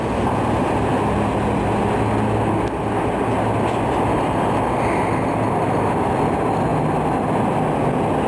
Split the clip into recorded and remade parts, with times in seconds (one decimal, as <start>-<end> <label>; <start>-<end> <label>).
0.0-8.3 recorded